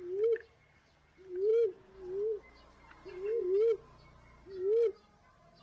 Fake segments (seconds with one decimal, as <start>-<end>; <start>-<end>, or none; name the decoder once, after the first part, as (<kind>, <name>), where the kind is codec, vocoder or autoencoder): none